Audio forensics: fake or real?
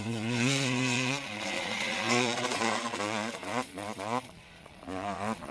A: fake